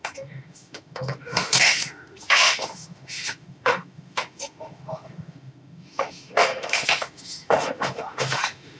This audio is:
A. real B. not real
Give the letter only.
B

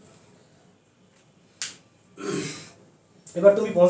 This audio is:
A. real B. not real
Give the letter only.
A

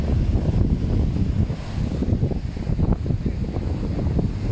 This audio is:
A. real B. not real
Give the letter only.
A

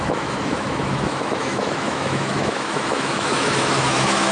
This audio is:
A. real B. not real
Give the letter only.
B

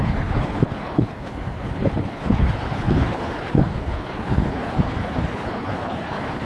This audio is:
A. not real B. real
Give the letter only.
A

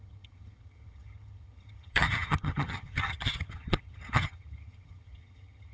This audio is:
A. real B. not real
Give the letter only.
B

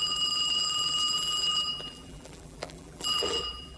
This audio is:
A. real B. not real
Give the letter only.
B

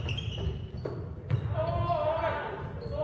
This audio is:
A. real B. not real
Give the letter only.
A